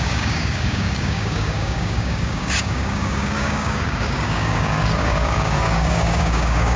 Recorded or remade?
remade